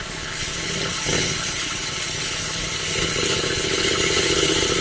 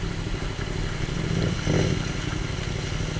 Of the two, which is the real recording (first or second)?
second